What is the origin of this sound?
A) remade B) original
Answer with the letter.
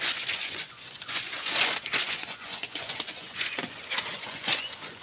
A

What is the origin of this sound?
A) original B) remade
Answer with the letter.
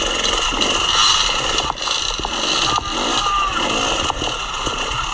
A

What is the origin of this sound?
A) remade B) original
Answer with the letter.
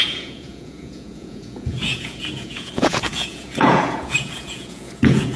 A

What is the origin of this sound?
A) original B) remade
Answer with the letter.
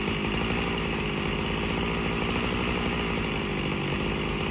A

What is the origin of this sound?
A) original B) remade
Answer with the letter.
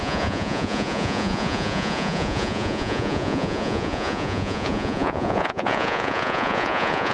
B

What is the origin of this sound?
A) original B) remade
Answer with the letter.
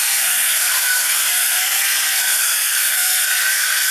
B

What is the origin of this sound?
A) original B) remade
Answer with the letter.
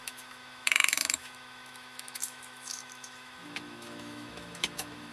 B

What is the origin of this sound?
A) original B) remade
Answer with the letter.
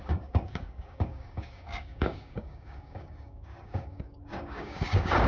B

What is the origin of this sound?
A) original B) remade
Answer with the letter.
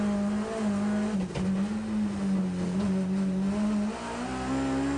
A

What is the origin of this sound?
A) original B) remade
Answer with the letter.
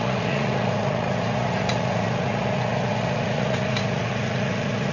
B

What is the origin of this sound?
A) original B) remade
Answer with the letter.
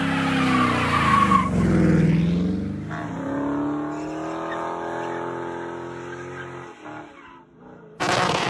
A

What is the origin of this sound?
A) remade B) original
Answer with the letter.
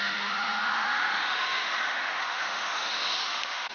A